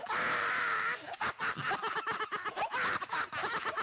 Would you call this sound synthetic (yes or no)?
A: no